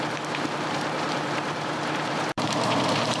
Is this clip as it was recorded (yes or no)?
no